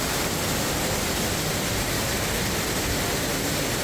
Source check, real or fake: real